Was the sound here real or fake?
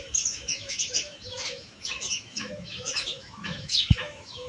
fake